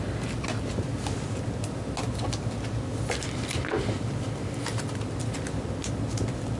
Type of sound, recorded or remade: recorded